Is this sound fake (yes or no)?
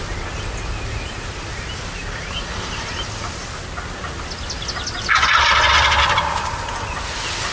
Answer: no